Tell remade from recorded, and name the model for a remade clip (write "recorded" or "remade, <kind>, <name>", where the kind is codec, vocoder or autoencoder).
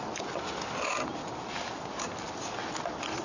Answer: recorded